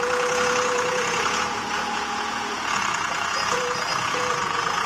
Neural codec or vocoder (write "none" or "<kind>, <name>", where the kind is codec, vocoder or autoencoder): vocoder, Vocos